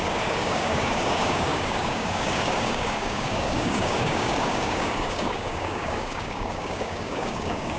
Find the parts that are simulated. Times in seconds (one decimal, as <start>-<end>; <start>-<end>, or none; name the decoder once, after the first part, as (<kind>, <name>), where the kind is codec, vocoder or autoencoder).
0.0-7.8 (codec, DAC)